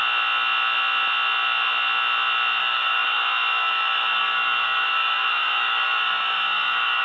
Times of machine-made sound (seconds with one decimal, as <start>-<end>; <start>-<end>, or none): 2.6-7.0